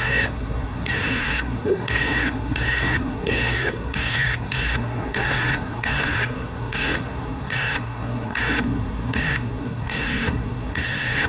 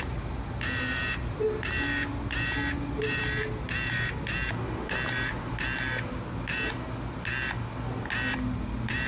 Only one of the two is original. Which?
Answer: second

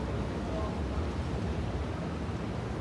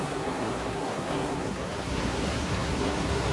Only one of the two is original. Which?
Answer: first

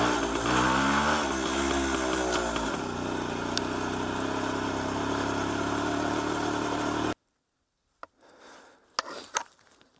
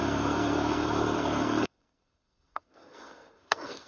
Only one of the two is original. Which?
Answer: first